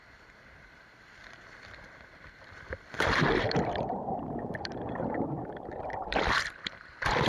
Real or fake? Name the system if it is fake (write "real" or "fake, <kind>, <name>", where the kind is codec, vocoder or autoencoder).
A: fake, vocoder, BigVGAN v2